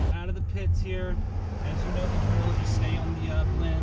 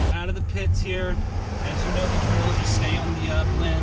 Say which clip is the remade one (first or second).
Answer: second